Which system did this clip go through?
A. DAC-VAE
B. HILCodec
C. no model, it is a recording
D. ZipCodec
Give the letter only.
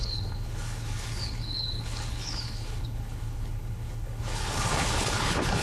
B